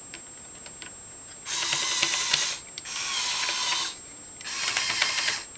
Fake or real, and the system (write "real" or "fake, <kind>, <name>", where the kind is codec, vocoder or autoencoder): real